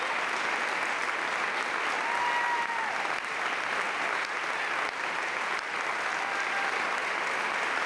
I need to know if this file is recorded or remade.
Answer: recorded